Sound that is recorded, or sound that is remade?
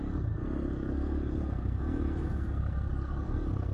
remade